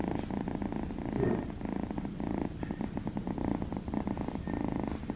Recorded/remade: recorded